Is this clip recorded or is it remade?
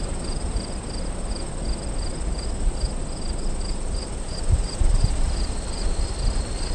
recorded